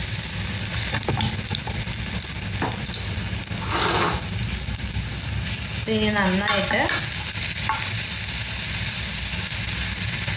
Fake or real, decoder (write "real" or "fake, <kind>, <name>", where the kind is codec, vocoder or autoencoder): real